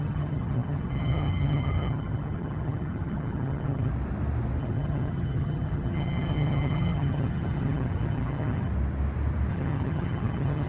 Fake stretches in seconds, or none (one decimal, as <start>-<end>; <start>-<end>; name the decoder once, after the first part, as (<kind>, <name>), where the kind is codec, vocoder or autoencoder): 0.0-3.9 (vocoder, HiFi-GAN); 4.6-8.7; 9.5-10.7